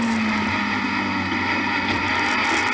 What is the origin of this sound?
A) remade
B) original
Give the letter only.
B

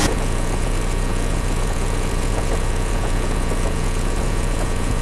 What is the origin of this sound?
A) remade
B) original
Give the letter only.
A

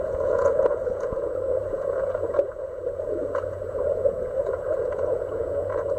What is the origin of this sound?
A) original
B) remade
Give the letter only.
B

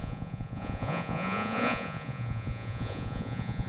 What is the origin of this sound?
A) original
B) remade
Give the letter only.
B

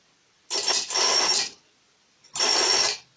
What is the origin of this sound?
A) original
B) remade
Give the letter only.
A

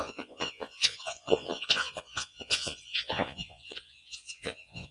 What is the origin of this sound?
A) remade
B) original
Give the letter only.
A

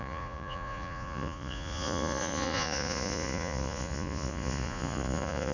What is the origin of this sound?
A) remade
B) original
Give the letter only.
A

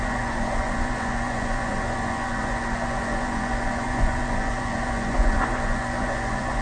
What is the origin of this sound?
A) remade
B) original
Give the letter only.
A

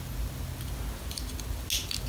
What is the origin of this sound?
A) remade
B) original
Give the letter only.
B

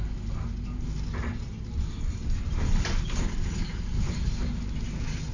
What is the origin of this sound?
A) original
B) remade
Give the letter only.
A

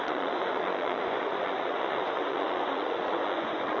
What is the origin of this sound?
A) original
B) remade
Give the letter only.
B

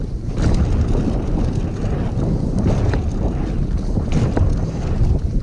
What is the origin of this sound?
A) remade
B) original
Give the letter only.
B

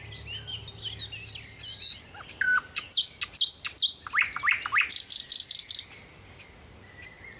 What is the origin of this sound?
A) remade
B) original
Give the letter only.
B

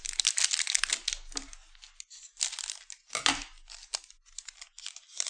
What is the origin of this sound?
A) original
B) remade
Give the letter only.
A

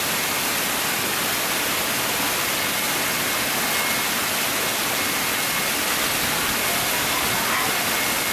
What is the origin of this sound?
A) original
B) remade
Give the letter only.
A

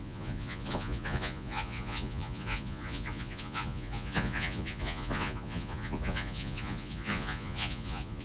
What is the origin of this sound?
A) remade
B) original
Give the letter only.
A